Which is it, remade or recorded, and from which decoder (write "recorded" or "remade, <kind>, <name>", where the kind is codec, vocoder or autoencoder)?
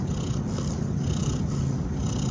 recorded